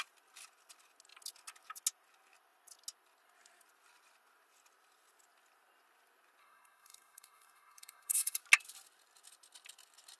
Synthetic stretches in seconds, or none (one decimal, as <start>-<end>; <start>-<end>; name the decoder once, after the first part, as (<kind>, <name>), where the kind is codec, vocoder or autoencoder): 6.4-8.4 (codec, SNAC)